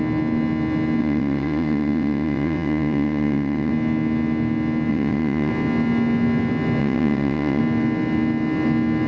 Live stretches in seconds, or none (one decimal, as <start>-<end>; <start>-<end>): 0.0-1.0; 3.7-4.9; 5.5-6.8; 7.6-9.1